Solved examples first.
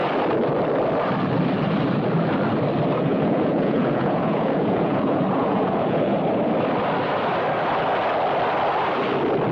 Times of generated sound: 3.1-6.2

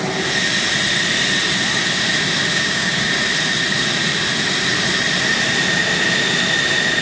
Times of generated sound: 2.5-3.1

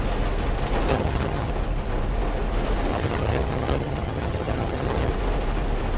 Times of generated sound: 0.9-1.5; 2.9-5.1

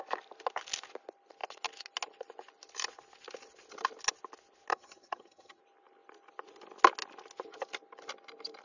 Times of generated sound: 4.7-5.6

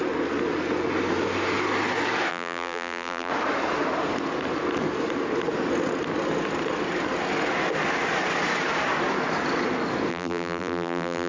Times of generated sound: 2.3-3.3; 10.1-11.3